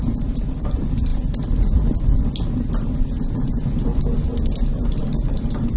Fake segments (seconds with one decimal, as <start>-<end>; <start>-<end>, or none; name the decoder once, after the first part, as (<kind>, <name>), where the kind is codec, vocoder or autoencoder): 0.0-1.1 (vocoder, BigVGAN v2); 3.2-3.9; 4.4-5.8